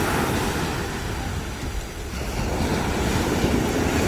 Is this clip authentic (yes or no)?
yes